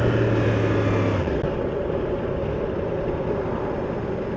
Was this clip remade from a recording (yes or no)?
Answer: no